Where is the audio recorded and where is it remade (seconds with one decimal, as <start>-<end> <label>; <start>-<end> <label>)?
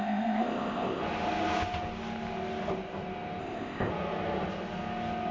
0.0-1.0 remade; 1.0-3.4 recorded; 3.4-3.9 remade; 3.9-5.3 recorded